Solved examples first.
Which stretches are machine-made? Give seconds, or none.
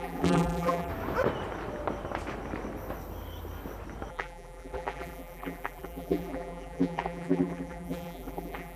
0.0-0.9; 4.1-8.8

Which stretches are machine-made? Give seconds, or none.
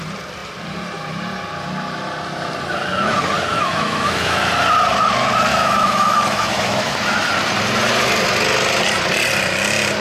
3.5-4.5; 5.5-7.3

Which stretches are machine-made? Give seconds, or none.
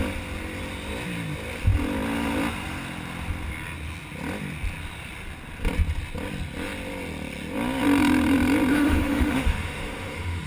8.7-10.5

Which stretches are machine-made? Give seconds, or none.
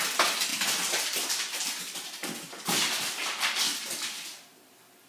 none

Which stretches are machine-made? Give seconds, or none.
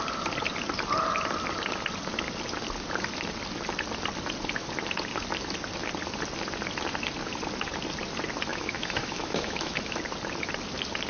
8.5-10.0